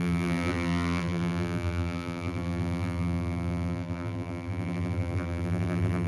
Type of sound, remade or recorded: remade